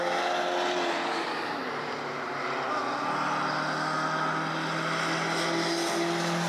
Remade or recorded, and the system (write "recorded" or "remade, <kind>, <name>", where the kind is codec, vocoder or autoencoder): recorded